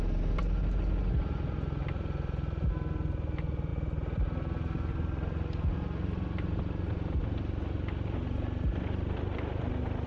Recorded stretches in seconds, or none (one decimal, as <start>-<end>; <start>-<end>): 0.0-10.1